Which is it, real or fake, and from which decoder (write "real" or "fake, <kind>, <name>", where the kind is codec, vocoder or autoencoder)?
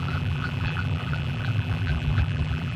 fake, vocoder, BigVGAN v2